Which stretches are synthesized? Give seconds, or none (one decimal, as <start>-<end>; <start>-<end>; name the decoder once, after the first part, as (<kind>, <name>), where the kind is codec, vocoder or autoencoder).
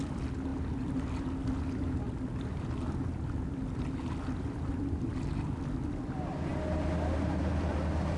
none